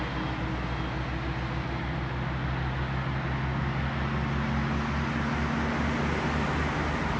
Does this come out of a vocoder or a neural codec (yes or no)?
no